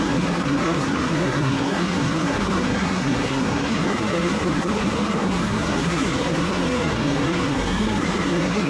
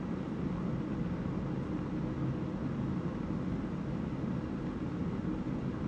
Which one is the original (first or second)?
second